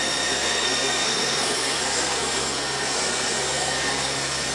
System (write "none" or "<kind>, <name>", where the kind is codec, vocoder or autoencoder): codec, SNAC